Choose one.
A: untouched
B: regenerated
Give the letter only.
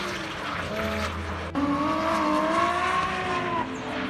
A